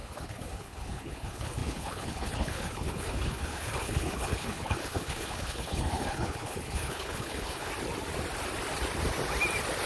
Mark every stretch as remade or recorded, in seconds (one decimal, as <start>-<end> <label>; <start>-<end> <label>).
0.0-7.7 remade; 7.7-9.9 recorded